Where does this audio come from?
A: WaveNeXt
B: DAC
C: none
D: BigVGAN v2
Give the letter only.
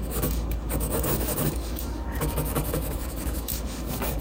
B